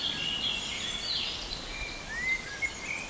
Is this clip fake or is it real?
real